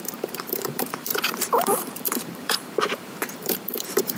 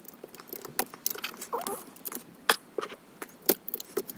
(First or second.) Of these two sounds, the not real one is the first